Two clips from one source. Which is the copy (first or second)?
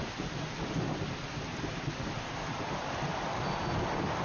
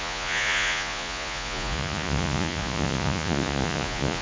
second